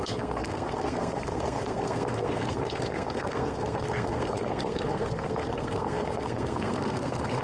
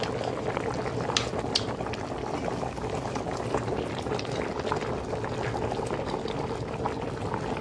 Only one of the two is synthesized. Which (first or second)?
first